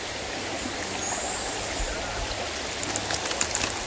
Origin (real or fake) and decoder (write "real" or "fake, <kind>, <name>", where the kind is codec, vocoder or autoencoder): real